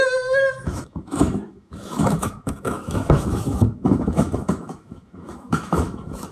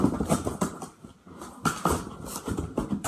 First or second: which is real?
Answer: second